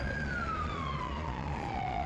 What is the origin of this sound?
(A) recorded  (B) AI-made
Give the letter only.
B